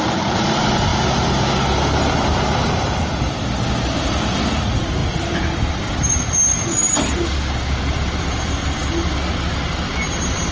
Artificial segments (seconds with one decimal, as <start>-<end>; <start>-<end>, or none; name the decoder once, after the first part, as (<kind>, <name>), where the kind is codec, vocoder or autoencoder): 0.0-0.9 (vocoder, BigVGAN v2); 1.9-10.5